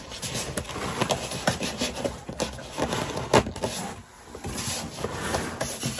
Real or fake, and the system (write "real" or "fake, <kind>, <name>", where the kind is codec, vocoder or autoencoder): fake, vocoder, BigVGAN v2